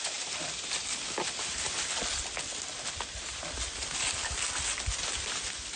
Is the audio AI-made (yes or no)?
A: no